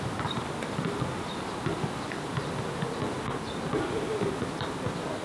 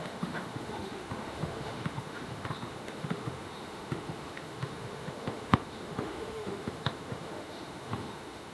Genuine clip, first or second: first